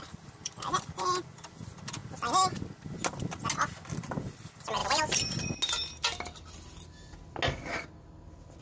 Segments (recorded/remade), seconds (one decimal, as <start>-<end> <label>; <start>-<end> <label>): 0.0-0.4 recorded; 0.4-1.2 remade; 1.2-4.8 recorded; 4.8-5.4 remade; 5.4-8.6 recorded